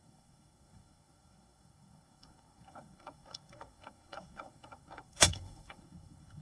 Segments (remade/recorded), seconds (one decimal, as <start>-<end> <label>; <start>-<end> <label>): 0.0-6.4 remade

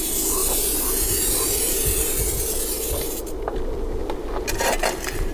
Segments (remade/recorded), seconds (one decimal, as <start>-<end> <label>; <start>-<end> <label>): 0.0-5.3 recorded

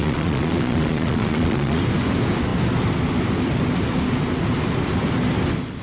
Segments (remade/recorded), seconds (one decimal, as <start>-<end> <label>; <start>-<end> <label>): 0.0-1.8 remade; 1.8-5.8 recorded

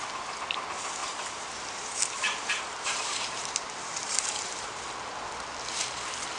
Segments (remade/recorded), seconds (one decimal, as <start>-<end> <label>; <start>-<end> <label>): 0.0-1.0 recorded; 1.0-4.8 remade; 4.8-6.4 recorded